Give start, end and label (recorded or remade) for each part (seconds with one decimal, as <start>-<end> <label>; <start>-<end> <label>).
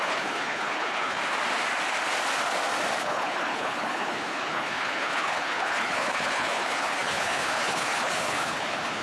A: 0.0-1.2 remade; 1.2-3.0 recorded; 3.0-9.0 remade